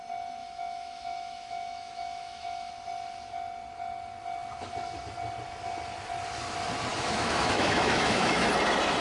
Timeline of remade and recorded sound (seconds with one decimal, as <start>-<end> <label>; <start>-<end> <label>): 0.0-0.4 recorded; 0.4-2.7 remade; 2.7-6.9 recorded; 6.9-8.5 remade; 8.5-9.0 recorded

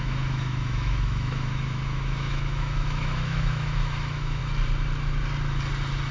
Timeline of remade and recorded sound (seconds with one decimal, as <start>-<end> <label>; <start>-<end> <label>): 0.0-4.4 remade; 4.4-6.1 recorded

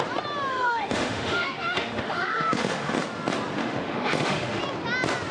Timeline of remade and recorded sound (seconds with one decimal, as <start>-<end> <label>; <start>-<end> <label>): 0.0-0.5 recorded; 0.5-3.0 remade; 3.0-3.6 recorded; 3.6-4.6 remade; 4.6-5.3 recorded